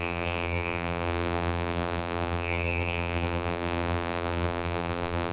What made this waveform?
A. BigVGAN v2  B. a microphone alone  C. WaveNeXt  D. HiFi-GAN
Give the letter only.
A